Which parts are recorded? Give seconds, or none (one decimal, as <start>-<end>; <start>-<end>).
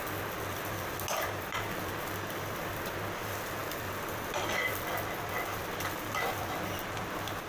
0.0-7.5